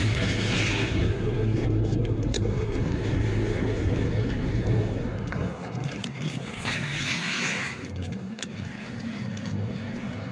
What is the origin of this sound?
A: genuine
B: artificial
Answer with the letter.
B